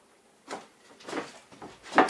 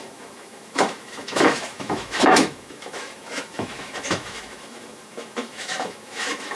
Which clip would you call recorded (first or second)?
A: first